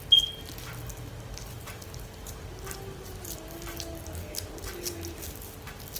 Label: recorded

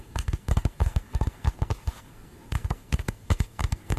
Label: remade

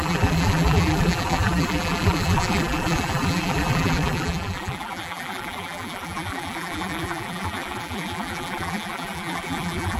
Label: remade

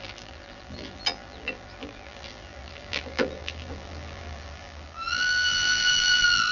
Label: remade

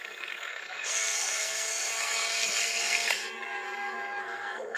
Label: remade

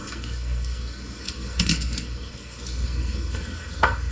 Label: remade